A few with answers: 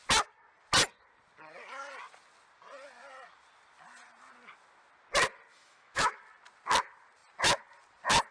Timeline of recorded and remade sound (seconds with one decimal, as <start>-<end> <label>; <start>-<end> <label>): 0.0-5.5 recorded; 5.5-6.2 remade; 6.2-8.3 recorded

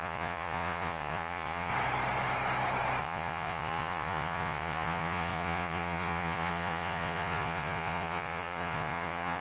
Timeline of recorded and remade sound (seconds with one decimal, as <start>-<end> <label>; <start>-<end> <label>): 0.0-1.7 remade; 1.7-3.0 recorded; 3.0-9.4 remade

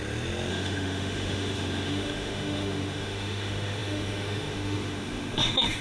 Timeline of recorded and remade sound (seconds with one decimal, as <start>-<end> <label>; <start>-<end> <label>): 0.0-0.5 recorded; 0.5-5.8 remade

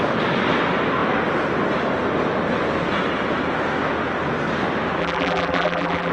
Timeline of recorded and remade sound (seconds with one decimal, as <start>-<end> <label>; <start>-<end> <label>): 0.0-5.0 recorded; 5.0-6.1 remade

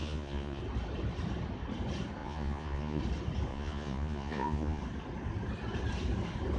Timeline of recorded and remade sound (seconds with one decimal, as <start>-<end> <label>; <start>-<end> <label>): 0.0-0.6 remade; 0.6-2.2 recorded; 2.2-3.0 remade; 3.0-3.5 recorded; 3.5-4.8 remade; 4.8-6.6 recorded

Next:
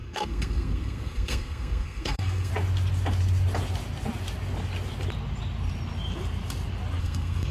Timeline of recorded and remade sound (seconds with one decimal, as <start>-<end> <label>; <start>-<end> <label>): 0.0-2.5 remade; 2.5-7.0 recorded; 7.0-7.5 remade